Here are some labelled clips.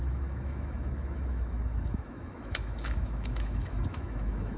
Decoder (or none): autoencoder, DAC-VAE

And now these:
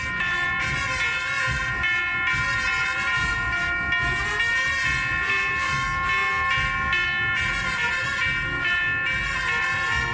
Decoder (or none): none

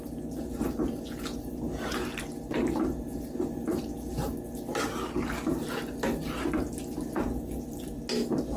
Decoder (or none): none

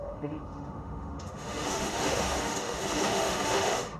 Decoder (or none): autoencoder, DAC-VAE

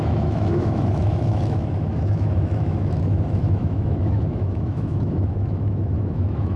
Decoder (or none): autoencoder, DAC-VAE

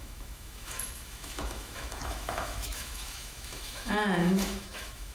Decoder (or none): autoencoder, DAC-VAE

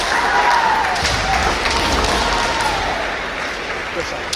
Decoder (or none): none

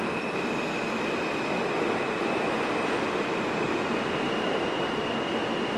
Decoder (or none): none